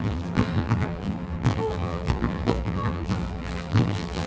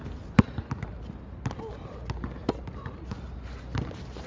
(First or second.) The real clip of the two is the second